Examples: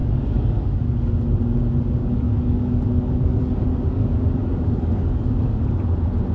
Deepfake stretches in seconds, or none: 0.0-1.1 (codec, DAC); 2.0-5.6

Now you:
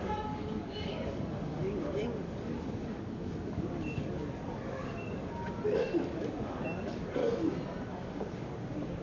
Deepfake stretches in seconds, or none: 0.0-7.2 (codec, DAC); 7.9-9.0